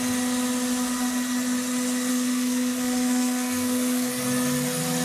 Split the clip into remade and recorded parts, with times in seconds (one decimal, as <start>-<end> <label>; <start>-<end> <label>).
0.0-2.1 recorded; 2.1-4.1 remade; 4.1-5.0 recorded